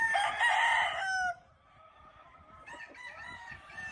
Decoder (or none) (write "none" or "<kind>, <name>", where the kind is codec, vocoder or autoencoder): none